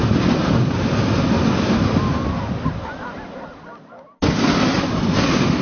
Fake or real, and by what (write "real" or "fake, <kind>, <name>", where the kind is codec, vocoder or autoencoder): real